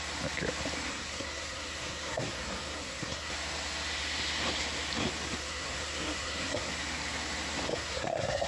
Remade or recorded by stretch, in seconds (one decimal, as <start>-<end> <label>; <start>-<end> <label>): 0.0-0.9 recorded; 0.9-3.3 remade; 3.3-5.4 recorded; 5.4-6.7 remade; 6.7-7.7 recorded; 7.7-8.5 remade